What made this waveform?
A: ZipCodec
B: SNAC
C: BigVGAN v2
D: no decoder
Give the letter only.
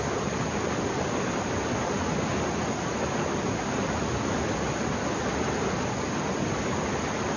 D